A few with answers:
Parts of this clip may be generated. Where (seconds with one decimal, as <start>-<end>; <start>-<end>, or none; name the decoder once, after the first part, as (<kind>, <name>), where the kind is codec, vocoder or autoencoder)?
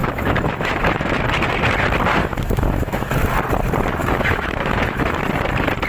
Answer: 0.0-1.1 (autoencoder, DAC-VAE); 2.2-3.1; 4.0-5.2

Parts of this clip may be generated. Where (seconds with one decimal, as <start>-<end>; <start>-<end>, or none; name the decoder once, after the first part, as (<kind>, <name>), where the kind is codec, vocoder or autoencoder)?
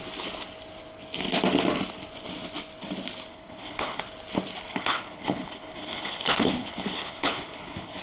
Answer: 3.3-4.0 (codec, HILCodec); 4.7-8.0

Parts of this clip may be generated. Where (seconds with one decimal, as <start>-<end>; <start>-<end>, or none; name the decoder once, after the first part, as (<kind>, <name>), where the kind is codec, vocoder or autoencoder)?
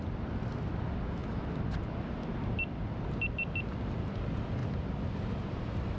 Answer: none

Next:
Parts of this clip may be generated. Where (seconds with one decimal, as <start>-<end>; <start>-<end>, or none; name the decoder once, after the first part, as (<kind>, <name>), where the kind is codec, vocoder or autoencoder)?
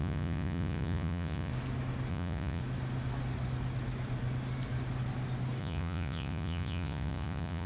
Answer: 0.0-1.5 (vocoder, Vocos); 2.1-2.6; 5.6-7.7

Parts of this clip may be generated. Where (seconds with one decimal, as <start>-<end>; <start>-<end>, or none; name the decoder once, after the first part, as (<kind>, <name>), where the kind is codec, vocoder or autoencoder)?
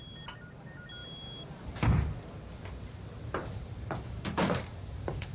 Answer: 3.4-4.6 (vocoder, BigVGAN v2)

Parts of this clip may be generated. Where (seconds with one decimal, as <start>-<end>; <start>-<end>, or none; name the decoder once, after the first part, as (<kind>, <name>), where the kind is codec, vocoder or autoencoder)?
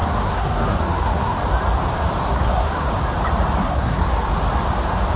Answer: 0.0-1.4 (codec, SNAC); 2.2-2.9; 3.6-4.3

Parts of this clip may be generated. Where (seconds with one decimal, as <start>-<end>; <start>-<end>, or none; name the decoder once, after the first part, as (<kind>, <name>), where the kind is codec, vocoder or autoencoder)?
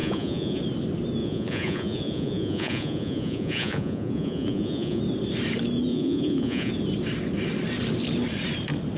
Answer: 0.0-0.6 (vocoder, Vocos); 1.2-5.0; 5.9-6.7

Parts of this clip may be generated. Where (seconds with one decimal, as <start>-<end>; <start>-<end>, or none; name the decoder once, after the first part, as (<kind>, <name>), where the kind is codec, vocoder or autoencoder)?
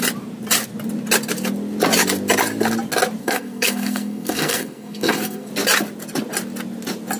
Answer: 3.2-5.5 (codec, SNAC)